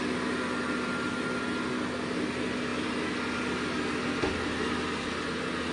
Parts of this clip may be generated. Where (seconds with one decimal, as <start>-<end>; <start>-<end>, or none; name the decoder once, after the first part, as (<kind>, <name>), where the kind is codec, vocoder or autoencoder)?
none